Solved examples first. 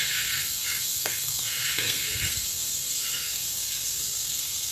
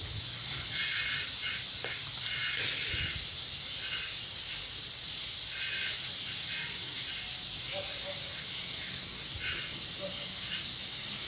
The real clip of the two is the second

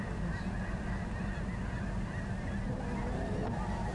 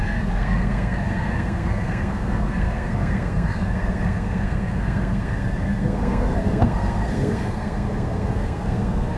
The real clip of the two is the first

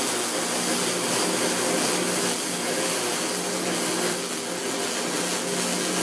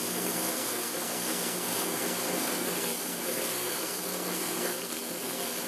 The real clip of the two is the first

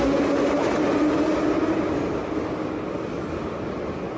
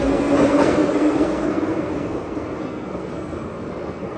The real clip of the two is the first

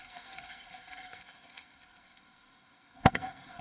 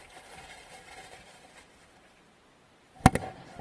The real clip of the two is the second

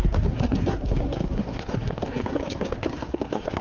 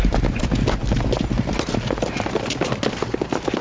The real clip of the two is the second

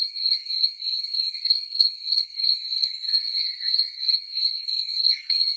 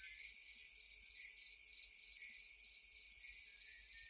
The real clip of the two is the second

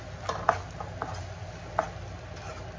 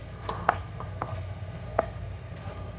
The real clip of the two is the first